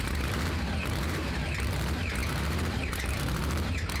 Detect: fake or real fake